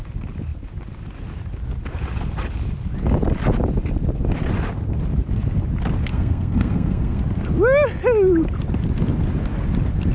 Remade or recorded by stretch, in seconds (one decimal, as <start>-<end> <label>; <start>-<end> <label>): 0.0-6.1 recorded; 6.1-7.2 remade; 7.2-10.1 recorded